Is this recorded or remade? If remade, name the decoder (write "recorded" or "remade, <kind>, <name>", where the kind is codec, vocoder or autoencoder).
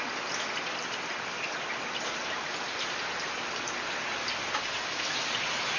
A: recorded